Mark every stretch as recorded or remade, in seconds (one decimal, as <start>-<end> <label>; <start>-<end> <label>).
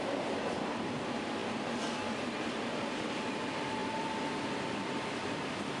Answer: 0.0-5.8 remade